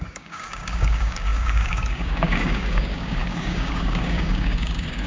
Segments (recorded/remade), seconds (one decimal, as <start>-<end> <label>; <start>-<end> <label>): 0.0-5.1 remade